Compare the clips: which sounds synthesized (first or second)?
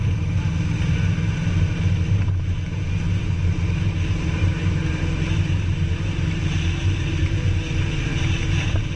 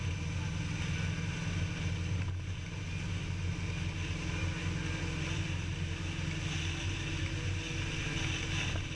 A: first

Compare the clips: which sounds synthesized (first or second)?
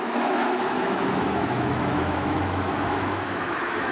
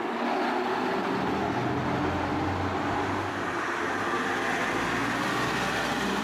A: first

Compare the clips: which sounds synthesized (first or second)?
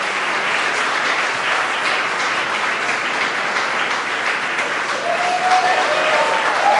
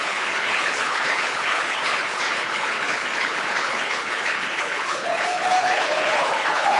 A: second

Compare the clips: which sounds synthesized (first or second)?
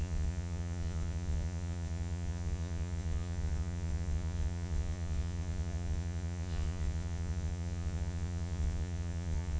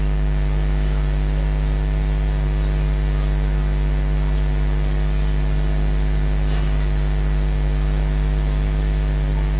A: first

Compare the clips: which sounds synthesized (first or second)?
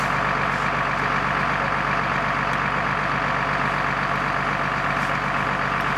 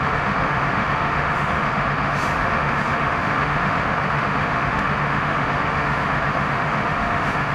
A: second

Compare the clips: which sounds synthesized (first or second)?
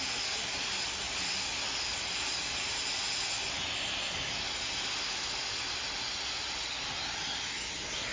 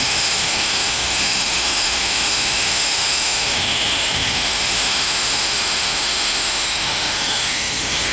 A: second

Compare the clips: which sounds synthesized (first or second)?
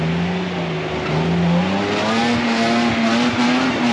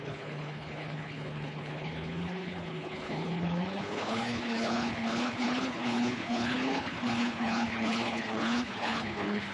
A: second